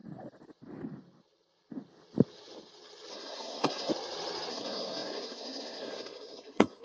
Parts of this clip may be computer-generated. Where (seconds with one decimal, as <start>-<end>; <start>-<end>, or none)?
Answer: 3.1-3.9; 4.5-6.8